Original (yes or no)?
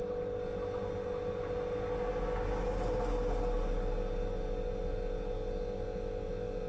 yes